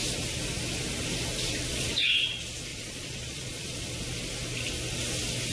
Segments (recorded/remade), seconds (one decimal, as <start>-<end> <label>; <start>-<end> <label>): 0.0-1.7 recorded; 1.7-2.2 remade; 2.2-2.7 recorded; 2.7-3.8 remade; 3.8-5.5 recorded